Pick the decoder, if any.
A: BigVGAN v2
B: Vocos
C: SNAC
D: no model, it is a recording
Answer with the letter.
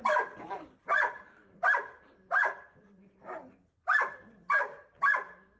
A